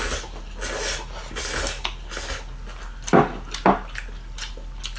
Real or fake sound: real